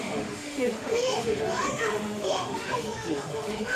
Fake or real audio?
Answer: fake